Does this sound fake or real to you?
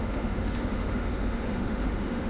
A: fake